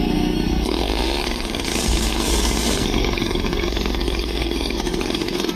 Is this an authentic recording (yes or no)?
no